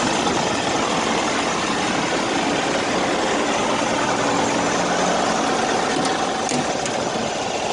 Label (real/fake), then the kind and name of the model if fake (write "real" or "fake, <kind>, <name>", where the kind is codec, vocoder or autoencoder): real